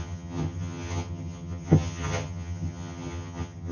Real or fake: fake